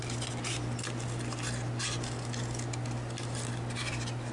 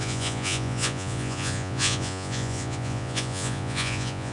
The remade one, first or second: second